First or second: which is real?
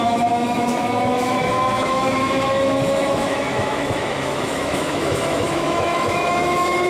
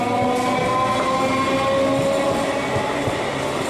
second